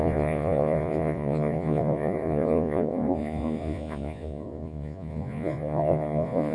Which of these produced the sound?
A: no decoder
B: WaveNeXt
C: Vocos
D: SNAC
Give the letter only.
C